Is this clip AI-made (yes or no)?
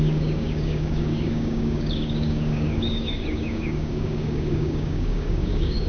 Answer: yes